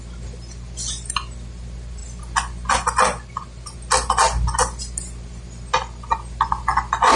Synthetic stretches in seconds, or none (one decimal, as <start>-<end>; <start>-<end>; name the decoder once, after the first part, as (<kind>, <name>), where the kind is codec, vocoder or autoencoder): none